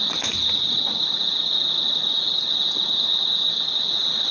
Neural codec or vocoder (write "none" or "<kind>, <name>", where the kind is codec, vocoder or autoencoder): none